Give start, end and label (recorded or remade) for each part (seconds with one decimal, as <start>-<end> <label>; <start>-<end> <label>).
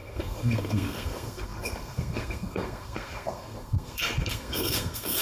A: 0.0-5.2 remade